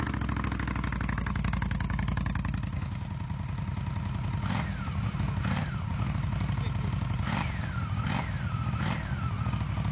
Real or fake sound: real